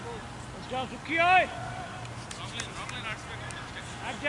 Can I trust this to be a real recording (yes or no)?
yes